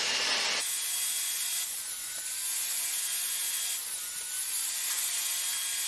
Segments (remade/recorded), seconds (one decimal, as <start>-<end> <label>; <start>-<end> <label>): 0.0-0.6 recorded; 0.6-3.2 remade; 3.2-5.9 recorded